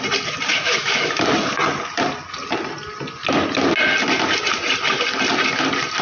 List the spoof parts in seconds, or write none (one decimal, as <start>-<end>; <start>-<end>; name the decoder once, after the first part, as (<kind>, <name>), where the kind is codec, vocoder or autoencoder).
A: 0.5-1.1 (autoencoder, DAC-VAE)